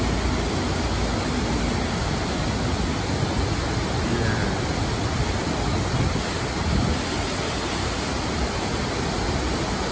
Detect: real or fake real